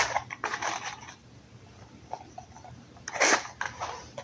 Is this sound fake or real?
real